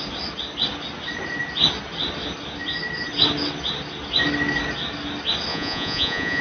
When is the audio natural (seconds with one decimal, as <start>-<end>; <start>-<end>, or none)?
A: 0.0-5.5